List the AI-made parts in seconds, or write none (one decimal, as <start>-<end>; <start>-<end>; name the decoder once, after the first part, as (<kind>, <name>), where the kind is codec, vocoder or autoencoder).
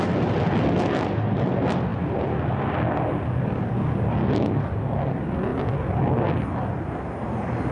none